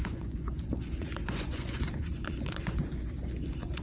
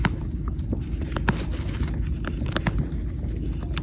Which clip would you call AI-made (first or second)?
first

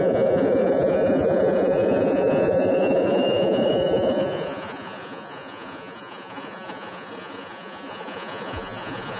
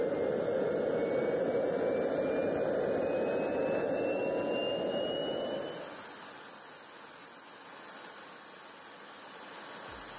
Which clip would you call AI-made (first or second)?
first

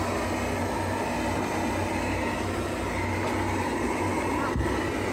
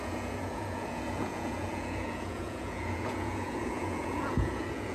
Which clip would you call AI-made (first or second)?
second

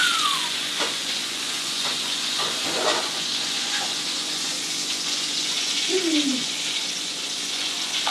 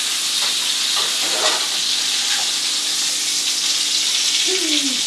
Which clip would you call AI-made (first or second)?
first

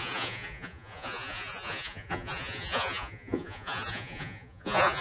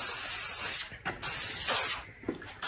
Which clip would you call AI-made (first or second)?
first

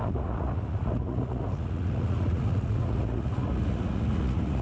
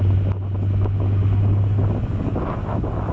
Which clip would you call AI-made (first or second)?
first